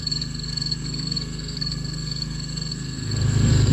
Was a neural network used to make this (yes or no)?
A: yes